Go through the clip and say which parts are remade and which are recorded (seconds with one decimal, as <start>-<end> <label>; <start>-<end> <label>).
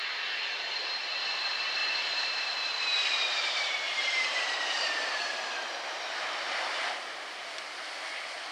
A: 0.0-1.8 recorded; 1.8-6.9 remade; 6.9-8.5 recorded